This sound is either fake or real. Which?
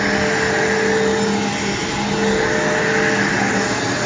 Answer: real